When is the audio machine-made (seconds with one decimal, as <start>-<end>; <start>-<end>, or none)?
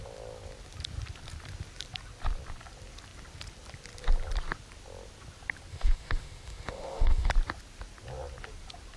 5.7-7.3